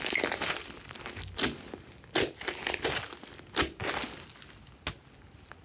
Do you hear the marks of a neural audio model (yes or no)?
no